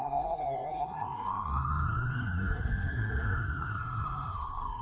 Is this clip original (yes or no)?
no